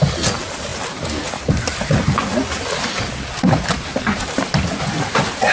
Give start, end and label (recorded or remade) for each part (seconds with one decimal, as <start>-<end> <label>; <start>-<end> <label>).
0.0-5.5 recorded